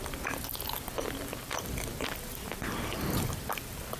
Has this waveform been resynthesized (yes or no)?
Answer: no